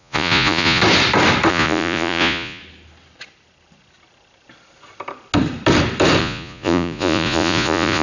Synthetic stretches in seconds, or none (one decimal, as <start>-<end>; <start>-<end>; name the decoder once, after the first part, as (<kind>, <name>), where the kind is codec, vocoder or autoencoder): 0.0-0.8 (vocoder, Vocos); 1.5-2.6; 6.2-8.0